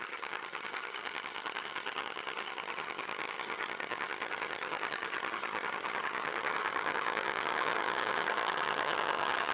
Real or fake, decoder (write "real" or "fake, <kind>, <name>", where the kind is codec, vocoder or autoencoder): fake, vocoder, HiFi-GAN